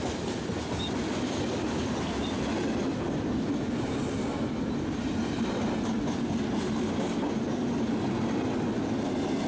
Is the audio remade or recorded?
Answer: recorded